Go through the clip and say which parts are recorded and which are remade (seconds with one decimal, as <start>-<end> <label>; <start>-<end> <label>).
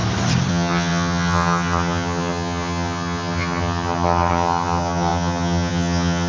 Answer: 0.0-0.5 recorded; 0.5-6.3 remade